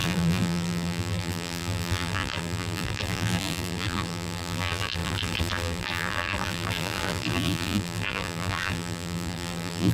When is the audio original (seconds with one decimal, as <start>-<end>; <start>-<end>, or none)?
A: none